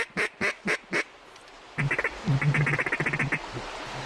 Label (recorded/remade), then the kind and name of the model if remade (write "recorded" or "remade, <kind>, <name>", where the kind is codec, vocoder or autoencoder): recorded